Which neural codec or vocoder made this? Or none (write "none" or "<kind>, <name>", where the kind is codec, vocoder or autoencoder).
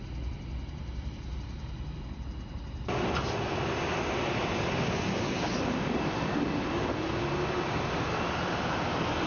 none